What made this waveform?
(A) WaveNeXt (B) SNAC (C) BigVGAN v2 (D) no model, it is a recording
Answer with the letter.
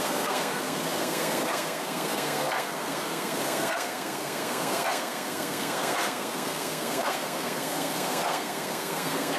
B